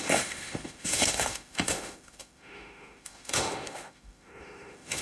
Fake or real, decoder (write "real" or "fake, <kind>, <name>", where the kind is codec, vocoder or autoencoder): fake, autoencoder, DAC-VAE